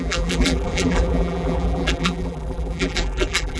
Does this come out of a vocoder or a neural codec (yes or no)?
yes